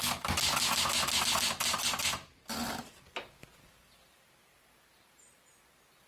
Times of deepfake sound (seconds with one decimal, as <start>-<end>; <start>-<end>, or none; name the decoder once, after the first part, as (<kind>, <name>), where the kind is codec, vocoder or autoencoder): 1.8-2.4 (vocoder, BigVGAN v2)

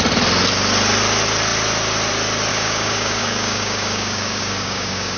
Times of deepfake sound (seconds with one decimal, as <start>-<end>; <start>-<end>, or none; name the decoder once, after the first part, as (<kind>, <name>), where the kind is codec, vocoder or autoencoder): 2.5-5.2 (codec, DAC)

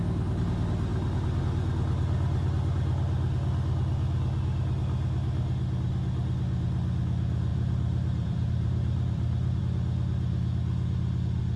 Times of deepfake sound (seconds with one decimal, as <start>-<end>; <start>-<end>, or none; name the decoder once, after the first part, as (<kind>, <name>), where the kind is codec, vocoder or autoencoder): 7.5-9.6 (vocoder, BigVGAN v2)

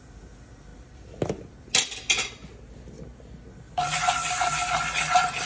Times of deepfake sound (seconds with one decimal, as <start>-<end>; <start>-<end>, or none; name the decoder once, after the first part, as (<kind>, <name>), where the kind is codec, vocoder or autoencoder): none